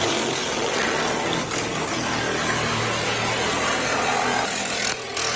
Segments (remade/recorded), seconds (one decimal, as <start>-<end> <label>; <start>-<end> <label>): 0.0-0.4 recorded; 0.4-1.0 remade; 1.0-5.4 recorded